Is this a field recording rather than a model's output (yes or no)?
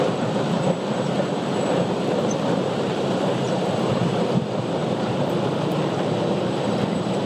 no